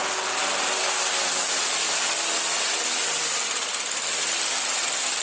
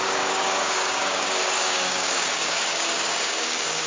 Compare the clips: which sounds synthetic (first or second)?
second